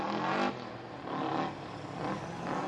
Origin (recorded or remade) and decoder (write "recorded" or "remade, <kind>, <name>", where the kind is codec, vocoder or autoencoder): recorded